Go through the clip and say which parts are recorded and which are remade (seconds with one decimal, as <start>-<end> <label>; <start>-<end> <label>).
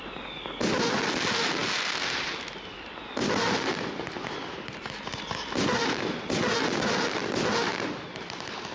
0.0-8.7 recorded